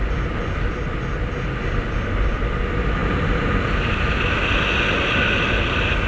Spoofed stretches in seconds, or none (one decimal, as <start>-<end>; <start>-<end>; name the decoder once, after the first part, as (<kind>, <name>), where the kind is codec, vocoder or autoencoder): none